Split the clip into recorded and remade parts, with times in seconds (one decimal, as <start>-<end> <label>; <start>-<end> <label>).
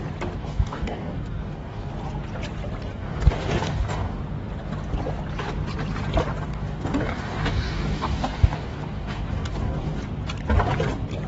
0.0-0.4 recorded; 0.4-1.9 remade; 1.9-2.9 recorded; 2.9-4.2 remade; 4.2-6.5 recorded; 6.5-10.0 remade; 10.0-11.3 recorded